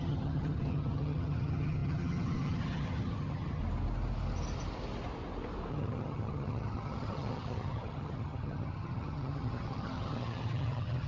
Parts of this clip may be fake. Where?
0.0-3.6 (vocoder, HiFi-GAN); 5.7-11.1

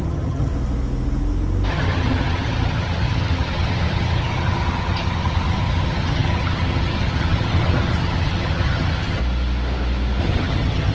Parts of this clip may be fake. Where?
0.0-0.5 (vocoder, HiFi-GAN); 1.7-9.2; 10.2-10.9

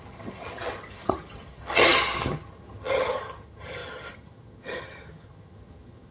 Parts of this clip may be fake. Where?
0.0-6.1 (vocoder, HiFi-GAN)